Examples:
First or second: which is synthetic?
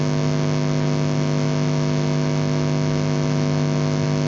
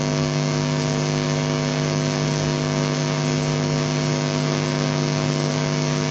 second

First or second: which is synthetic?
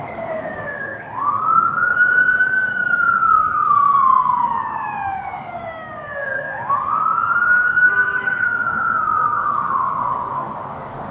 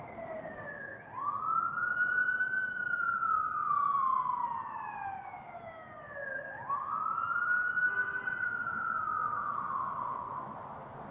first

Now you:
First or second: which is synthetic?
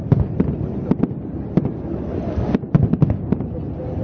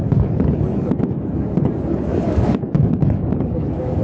second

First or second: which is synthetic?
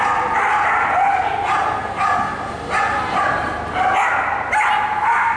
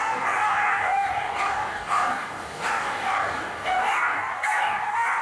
second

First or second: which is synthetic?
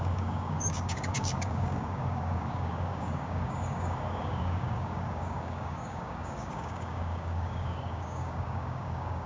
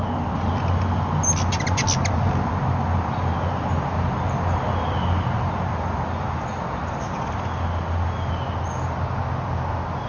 first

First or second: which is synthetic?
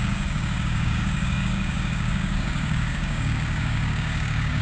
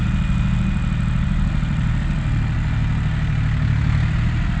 first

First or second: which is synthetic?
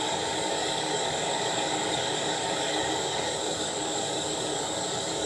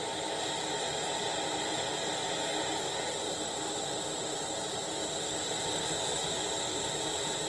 first